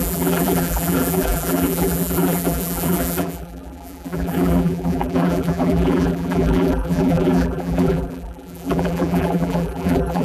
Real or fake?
fake